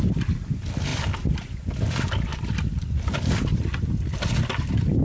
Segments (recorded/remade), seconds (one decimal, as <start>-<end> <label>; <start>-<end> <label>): 0.0-5.0 recorded